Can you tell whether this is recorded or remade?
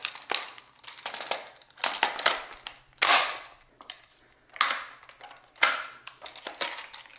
recorded